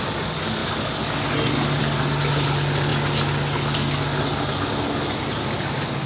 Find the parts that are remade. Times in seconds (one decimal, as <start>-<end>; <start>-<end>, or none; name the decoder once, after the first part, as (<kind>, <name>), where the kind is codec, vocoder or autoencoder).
none